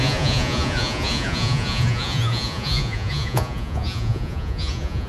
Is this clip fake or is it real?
fake